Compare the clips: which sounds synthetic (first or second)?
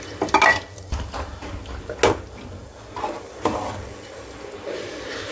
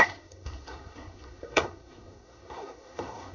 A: second